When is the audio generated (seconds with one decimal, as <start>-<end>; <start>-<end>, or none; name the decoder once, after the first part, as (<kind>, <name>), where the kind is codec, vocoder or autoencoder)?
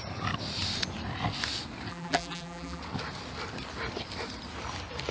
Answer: 1.9-2.8 (vocoder, BigVGAN v2)